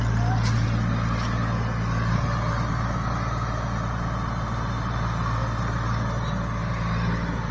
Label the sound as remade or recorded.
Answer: recorded